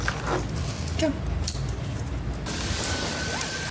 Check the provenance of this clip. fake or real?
real